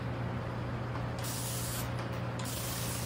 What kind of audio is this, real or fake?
real